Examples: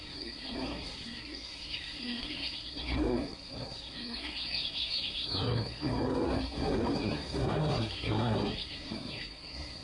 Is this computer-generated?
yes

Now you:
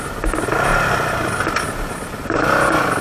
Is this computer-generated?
no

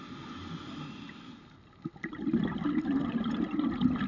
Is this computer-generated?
no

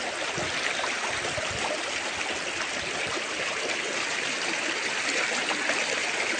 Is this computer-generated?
no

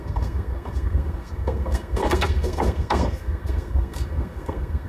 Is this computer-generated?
yes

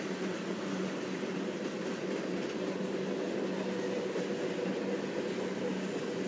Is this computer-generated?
no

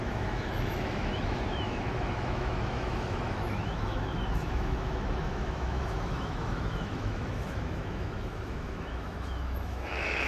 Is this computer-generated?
yes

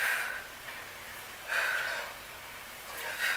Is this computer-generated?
no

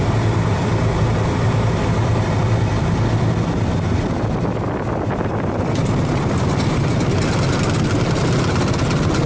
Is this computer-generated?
no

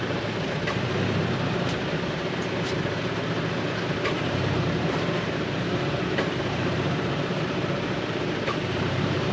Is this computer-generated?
yes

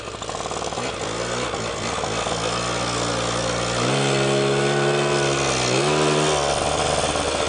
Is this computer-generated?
no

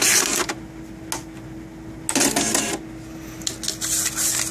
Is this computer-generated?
no